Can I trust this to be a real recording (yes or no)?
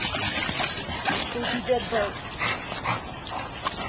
yes